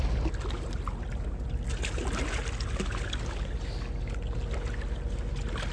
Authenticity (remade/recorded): recorded